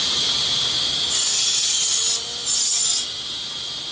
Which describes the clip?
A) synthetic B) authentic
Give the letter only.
B